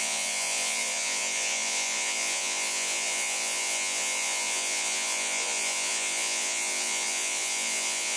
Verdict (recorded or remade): remade